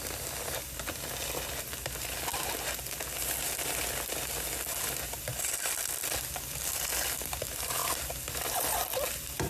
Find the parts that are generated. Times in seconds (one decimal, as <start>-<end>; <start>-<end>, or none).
none